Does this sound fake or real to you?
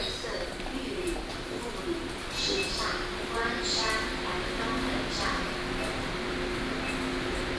real